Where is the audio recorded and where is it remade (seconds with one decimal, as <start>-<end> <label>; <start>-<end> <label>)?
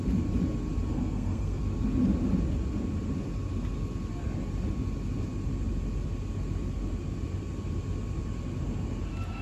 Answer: 0.0-0.9 recorded; 0.9-1.6 remade; 1.6-9.4 recorded